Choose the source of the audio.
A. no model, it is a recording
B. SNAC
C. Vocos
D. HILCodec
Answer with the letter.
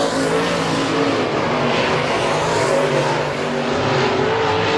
A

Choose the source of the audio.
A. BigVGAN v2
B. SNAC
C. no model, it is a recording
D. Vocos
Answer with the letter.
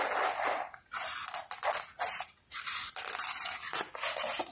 C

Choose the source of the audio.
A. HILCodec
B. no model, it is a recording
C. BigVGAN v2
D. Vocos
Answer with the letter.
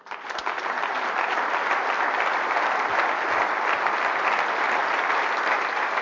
B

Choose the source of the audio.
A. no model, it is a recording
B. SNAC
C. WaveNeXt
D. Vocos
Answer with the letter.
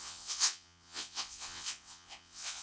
C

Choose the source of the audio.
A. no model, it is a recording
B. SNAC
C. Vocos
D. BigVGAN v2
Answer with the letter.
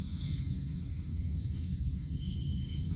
B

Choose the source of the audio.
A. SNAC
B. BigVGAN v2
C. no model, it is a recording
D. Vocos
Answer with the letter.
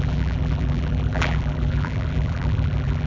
B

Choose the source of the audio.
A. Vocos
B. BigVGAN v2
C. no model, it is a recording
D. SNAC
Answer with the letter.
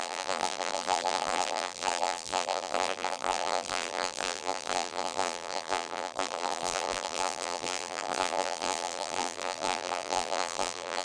B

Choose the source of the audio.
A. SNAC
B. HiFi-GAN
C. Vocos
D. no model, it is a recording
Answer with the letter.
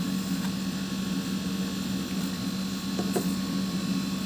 D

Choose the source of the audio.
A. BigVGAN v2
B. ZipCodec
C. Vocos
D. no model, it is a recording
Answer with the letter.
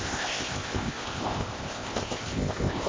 B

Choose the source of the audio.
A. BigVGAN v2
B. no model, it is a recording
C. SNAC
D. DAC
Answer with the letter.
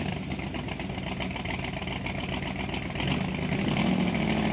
B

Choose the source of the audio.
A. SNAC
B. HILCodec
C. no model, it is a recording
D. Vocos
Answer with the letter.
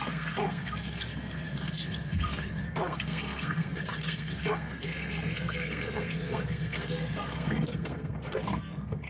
A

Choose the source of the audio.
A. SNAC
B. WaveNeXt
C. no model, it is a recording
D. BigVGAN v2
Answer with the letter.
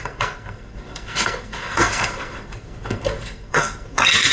A